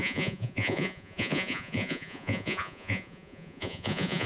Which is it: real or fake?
fake